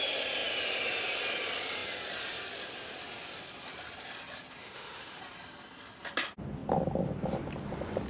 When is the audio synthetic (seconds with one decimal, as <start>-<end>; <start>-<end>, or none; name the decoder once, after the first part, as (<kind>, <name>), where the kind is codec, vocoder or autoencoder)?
4.6-5.2 (autoencoder, DAC-VAE)